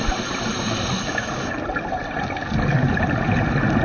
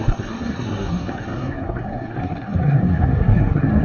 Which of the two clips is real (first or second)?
first